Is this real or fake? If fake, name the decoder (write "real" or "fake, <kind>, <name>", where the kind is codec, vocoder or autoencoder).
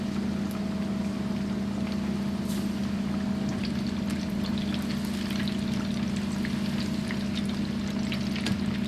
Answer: real